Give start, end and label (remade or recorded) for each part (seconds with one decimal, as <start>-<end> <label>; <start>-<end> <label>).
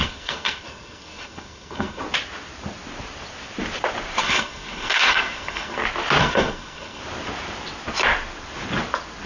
0.0-2.0 remade; 2.0-4.2 recorded; 4.2-5.8 remade; 5.8-6.2 recorded; 6.2-7.0 remade; 7.0-9.3 recorded